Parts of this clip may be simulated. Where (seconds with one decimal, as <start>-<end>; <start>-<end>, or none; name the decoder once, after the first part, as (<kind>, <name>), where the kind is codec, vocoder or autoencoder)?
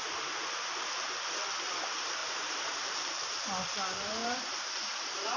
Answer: 2.2-3.4 (vocoder, BigVGAN v2); 4.2-5.4